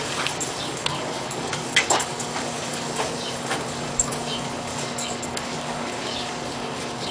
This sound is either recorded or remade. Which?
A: remade